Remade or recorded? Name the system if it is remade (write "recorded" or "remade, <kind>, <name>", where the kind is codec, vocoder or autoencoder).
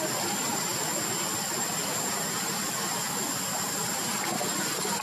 recorded